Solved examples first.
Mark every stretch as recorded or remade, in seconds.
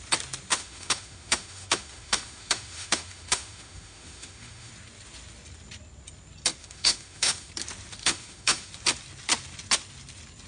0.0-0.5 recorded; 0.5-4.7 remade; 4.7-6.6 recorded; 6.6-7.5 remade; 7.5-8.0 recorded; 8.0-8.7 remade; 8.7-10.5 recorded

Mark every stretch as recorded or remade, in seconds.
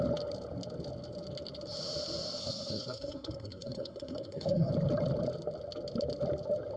0.0-2.4 recorded; 2.4-4.7 remade; 4.7-6.8 recorded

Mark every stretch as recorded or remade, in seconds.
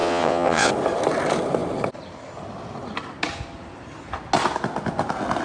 0.0-0.7 remade; 0.7-5.4 recorded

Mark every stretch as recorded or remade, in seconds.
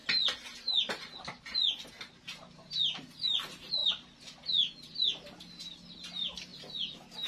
0.0-7.3 recorded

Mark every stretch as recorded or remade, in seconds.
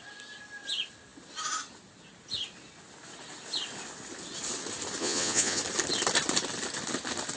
0.0-5.0 recorded; 5.0-5.6 remade; 5.6-7.4 recorded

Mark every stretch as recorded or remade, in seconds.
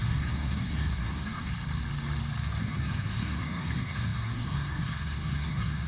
0.0-1.5 remade; 1.5-2.6 recorded; 2.6-5.9 remade